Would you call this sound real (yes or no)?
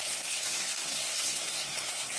no